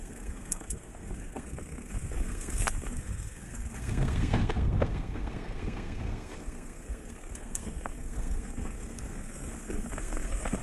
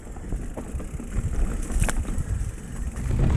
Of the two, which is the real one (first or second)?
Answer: second